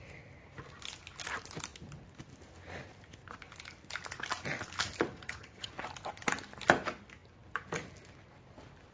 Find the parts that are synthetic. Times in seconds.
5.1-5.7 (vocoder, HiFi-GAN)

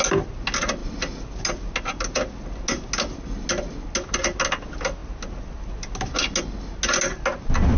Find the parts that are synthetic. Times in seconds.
none

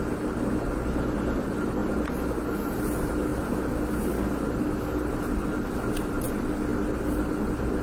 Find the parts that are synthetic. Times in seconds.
none

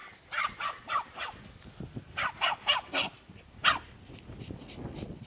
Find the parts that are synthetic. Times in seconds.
none

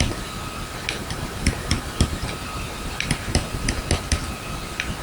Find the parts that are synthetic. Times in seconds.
1.0-3.5 (vocoder, BigVGAN v2)

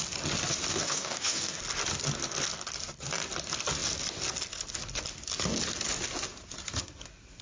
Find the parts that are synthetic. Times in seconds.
0.7-1.6 (codec, DAC)

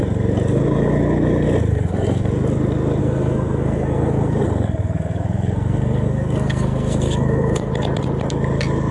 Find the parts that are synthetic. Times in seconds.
1.7-2.3 (codec, SNAC); 3.0-7.7